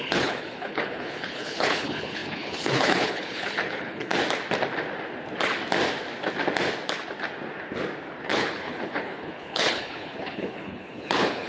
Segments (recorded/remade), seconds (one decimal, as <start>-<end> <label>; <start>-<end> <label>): 0.0-4.1 remade; 4.1-8.3 recorded; 8.3-11.5 remade